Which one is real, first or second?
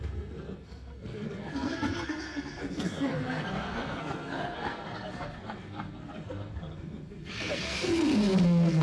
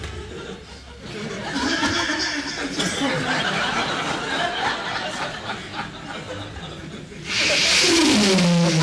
second